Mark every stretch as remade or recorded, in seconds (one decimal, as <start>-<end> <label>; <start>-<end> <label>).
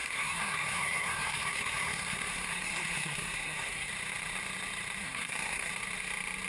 0.0-3.9 remade; 3.9-5.0 recorded; 5.0-5.7 remade; 5.7-6.5 recorded